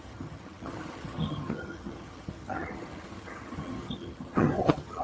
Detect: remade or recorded remade